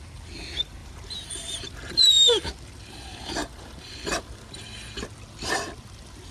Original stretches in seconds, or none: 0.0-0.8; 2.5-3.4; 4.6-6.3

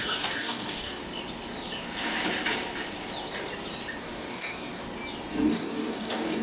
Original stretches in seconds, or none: 1.0-4.0; 4.8-5.3

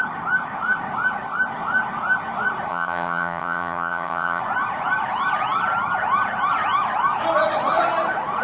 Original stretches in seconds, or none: 0.0-2.7; 4.4-8.4

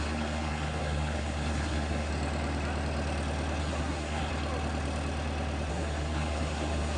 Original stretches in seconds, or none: 2.1-3.6; 4.3-5.7

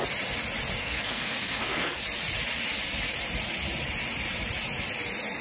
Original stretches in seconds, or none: 0.0-0.8; 2.0-5.4